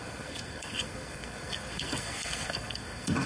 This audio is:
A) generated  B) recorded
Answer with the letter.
A